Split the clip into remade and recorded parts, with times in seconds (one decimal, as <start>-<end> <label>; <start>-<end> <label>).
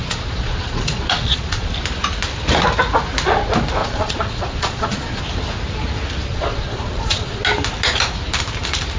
0.0-1.7 remade; 1.7-3.8 recorded; 3.8-5.2 remade; 5.2-6.3 recorded; 6.3-7.4 remade; 7.4-9.0 recorded